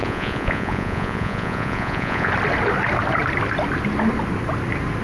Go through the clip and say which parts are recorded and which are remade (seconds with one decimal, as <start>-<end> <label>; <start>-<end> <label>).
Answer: 0.0-2.3 remade; 2.3-5.0 recorded